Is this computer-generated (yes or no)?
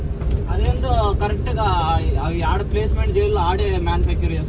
no